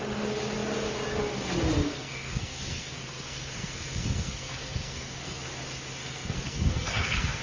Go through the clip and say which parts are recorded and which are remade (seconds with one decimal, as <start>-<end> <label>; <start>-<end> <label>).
0.0-1.8 recorded; 1.8-5.4 remade; 5.4-6.0 recorded; 6.0-7.4 remade